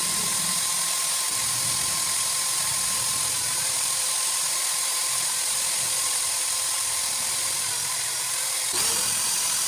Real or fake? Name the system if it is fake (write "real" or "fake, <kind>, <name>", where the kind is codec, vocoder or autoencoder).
fake, vocoder, BigVGAN v2